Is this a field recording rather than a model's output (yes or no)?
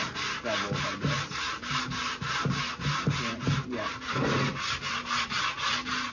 yes